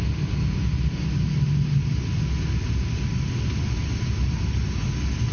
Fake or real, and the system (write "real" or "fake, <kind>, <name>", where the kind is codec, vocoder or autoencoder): real